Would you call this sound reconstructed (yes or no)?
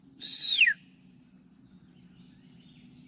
no